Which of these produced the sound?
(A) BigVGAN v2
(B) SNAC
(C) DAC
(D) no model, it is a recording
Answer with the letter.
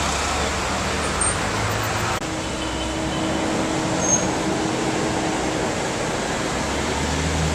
D